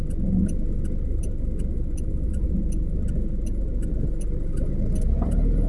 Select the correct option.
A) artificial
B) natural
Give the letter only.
B